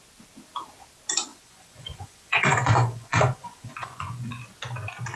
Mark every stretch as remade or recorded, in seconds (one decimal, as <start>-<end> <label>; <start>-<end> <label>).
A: 0.0-1.3 recorded; 1.3-4.4 remade; 4.4-5.2 recorded